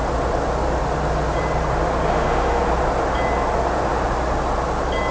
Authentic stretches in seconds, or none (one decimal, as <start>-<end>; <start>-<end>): 0.0-2.1; 2.6-5.1